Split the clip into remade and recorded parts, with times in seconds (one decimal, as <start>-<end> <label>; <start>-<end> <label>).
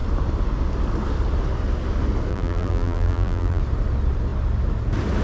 0.0-2.3 recorded; 2.3-3.6 remade; 3.6-5.2 recorded